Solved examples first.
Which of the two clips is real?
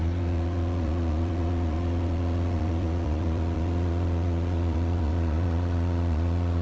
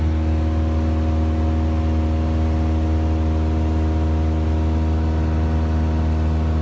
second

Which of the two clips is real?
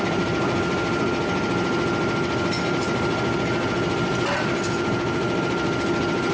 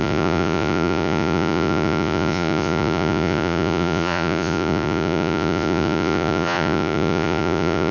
first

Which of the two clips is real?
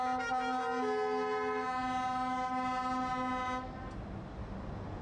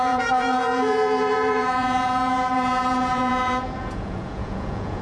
first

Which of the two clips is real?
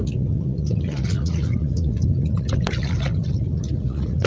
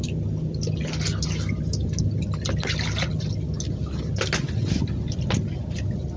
second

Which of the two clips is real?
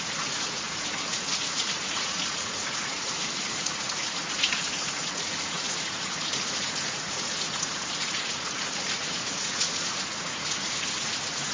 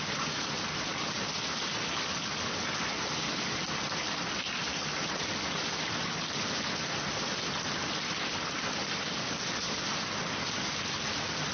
second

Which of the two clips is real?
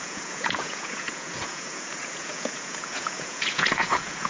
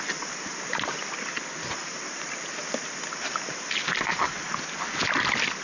second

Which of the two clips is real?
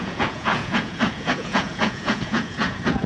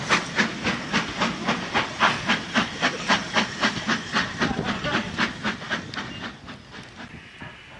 second